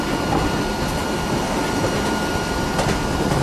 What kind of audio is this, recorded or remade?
recorded